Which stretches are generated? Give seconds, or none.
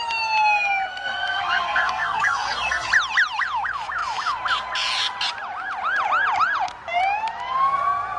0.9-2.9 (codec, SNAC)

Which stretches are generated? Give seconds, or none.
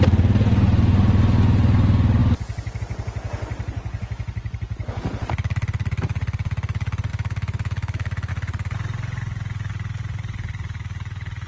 7.1-8.3 (autoencoder, DAC-VAE)